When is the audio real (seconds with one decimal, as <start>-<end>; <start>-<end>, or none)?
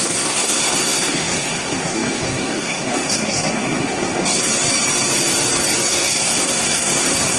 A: 4.5-5.9